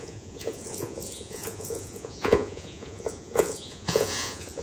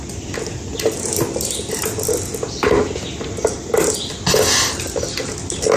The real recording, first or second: second